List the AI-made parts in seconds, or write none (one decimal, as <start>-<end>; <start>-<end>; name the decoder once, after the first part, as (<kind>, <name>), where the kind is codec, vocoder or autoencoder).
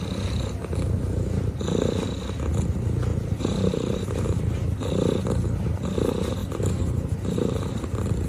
3.1-4.4 (vocoder, BigVGAN v2); 6.4-7.8